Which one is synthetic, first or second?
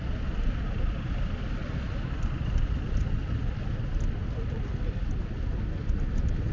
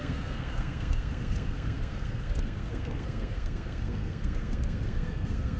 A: second